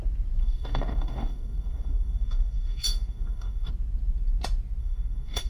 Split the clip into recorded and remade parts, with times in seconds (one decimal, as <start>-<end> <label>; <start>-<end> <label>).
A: 0.0-0.4 recorded; 0.4-3.7 remade; 3.7-4.8 recorded; 4.8-5.5 remade

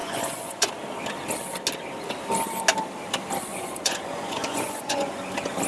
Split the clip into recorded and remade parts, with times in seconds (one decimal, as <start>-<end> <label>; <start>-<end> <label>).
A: 0.0-0.7 remade; 0.7-3.5 recorded; 3.5-5.2 remade; 5.2-5.7 recorded

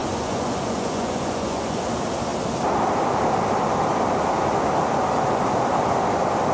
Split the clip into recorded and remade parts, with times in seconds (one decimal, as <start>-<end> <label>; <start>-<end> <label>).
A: 0.0-1.8 remade; 1.8-6.5 recorded

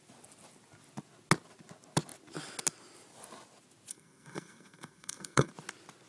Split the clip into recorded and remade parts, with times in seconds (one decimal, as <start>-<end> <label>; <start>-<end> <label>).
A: 0.0-3.9 recorded; 3.9-5.5 remade; 5.5-6.1 recorded